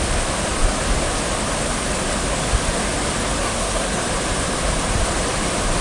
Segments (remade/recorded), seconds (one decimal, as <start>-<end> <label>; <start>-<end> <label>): 0.0-3.4 recorded; 3.4-4.0 remade; 4.0-5.8 recorded